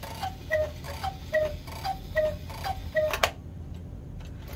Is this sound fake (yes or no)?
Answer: no